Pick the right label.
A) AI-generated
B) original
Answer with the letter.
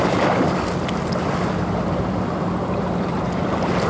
B